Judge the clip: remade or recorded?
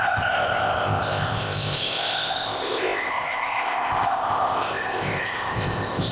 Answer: remade